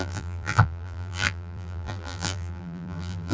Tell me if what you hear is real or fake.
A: fake